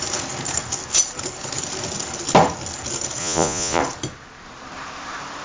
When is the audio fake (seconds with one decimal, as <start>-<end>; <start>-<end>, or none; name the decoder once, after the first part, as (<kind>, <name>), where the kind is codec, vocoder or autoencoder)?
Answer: 3.2-3.8 (vocoder, Vocos)